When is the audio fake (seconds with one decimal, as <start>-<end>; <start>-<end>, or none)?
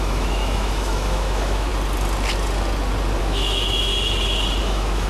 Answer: 0.0-1.7; 3.2-3.9; 4.6-5.1